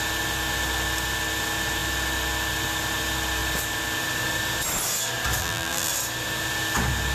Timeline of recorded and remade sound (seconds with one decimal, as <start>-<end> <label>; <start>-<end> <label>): 0.0-5.4 recorded; 5.4-5.9 remade; 5.9-7.1 recorded